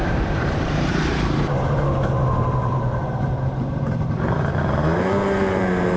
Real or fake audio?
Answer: fake